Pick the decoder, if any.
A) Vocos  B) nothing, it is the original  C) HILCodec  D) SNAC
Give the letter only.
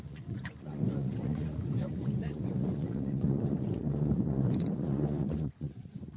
A